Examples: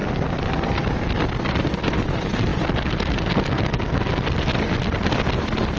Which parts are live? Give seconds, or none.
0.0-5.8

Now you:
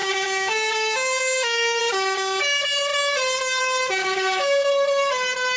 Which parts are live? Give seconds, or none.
1.8-4.0; 4.7-5.6

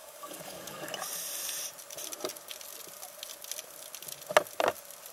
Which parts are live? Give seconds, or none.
0.9-5.1

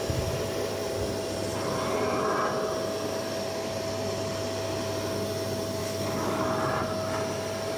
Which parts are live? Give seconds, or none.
0.0-5.8; 6.5-7.8

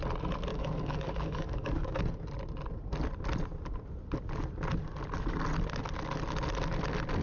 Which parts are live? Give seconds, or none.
0.0-0.5; 2.0-7.2

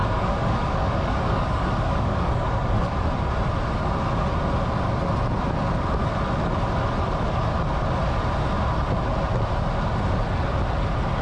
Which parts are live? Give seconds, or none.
2.8-11.2

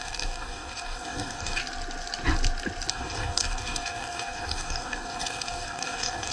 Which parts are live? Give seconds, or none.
1.6-2.9

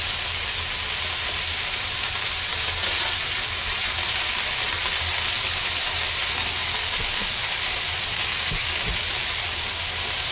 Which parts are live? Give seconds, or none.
0.0-10.3